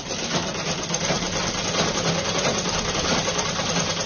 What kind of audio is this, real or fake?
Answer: real